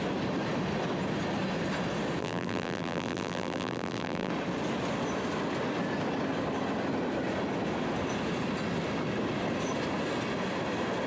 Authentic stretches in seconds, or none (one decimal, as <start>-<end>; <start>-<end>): 0.0-2.2; 4.3-11.1